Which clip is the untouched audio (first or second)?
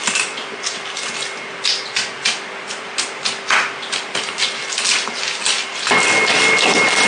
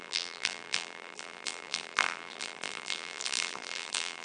first